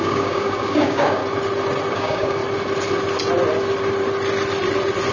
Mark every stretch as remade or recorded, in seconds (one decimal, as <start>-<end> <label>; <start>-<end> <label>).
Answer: 0.0-1.2 remade; 1.2-1.9 recorded; 1.9-2.4 remade; 2.4-5.1 recorded